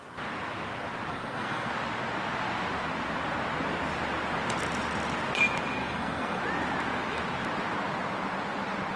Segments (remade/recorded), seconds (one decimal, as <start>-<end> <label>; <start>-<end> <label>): 0.0-1.1 recorded; 1.1-1.7 remade; 1.7-5.8 recorded; 5.8-6.4 remade; 6.4-9.0 recorded